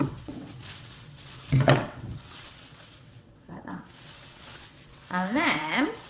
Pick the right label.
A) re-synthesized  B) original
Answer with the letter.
A